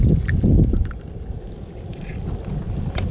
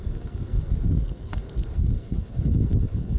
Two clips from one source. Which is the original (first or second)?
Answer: first